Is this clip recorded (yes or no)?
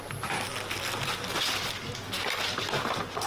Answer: yes